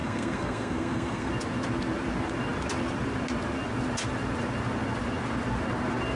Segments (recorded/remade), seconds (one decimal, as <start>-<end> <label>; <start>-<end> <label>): 0.0-1.3 remade; 1.3-6.2 recorded